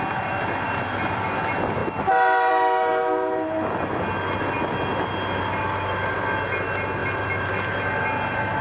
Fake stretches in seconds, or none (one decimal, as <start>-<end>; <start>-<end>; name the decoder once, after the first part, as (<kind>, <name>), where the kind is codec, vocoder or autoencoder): none